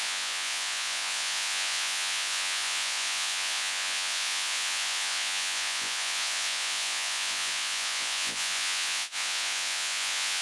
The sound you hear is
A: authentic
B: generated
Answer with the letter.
B